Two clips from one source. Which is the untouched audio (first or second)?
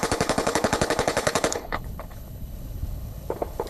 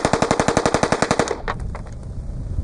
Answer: second